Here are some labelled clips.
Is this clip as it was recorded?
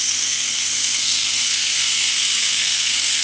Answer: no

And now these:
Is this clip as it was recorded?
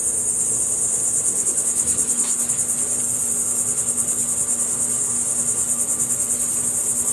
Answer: yes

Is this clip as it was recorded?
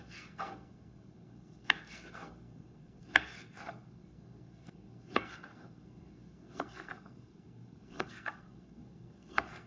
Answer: no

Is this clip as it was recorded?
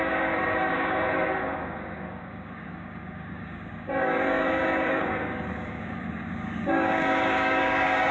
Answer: no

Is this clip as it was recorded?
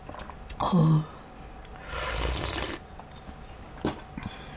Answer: yes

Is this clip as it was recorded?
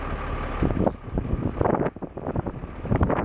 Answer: yes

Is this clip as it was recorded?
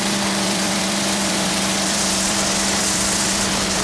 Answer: no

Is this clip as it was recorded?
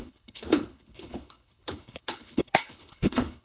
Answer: no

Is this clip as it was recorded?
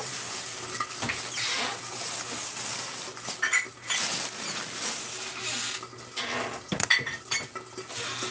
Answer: yes